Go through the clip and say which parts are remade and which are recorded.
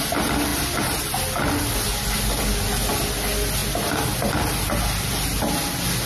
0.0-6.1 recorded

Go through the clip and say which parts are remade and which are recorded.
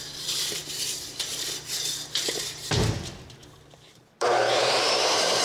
0.0-0.6 remade; 0.6-2.2 recorded; 2.2-5.4 remade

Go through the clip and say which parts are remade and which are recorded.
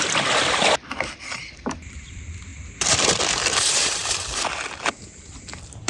0.0-4.0 remade; 4.0-5.9 recorded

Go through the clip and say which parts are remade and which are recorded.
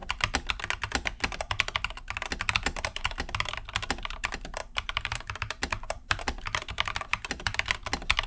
0.0-4.6 recorded; 4.6-7.7 remade; 7.7-8.3 recorded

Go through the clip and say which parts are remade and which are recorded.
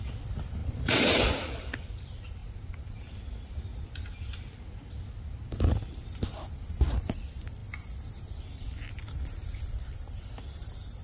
0.0-2.4 remade; 2.4-6.9 recorded; 6.9-11.0 remade